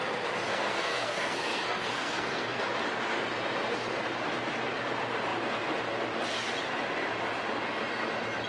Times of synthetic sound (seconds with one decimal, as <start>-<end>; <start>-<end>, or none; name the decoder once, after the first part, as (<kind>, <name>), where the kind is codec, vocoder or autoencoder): 0.5-2.7 (codec, SNAC)